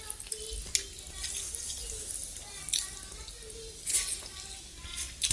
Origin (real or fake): real